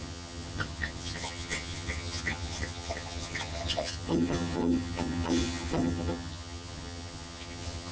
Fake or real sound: fake